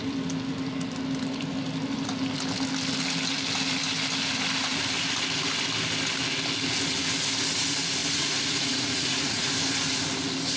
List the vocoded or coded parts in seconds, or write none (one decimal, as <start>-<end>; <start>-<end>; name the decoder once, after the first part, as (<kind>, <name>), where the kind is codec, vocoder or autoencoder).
8.0-9.5 (vocoder, Vocos)